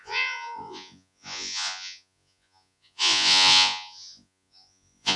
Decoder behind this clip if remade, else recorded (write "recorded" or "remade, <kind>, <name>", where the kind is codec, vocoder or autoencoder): remade, vocoder, Vocos